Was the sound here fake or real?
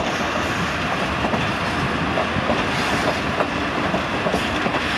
real